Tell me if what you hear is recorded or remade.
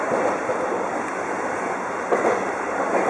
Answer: recorded